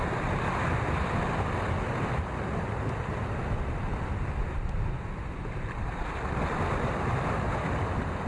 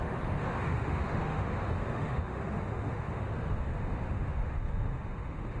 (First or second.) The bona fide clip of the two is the first